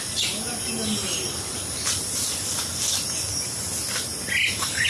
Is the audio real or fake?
real